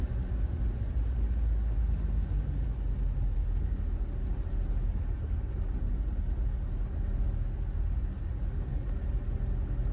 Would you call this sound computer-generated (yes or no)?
no